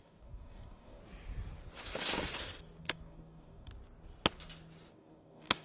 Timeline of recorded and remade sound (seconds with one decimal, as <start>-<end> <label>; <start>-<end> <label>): 0.0-1.0 remade; 1.0-2.8 recorded; 2.8-3.7 remade; 3.7-4.9 recorded; 4.9-5.6 remade